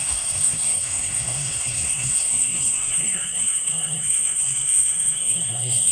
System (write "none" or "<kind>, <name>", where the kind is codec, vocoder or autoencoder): codec, SNAC